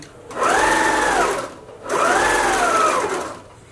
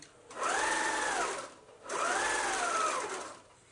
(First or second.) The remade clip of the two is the second